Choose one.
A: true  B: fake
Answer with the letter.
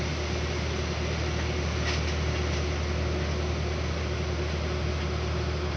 A